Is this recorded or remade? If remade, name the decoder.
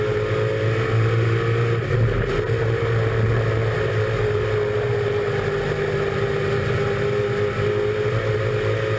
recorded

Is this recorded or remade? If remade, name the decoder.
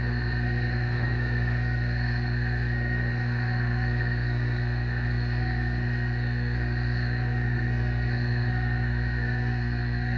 remade, codec, SNAC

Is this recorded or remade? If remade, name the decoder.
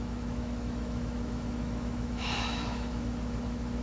remade, autoencoder, DAC-VAE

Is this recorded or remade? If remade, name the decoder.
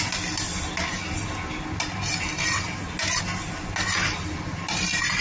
recorded